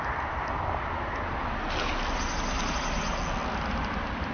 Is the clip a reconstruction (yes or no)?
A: no